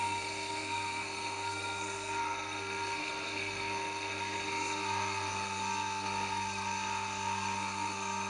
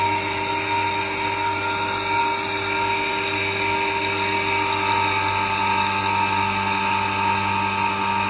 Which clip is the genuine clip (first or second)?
second